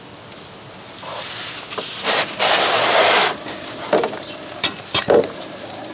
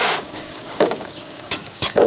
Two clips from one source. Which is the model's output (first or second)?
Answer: second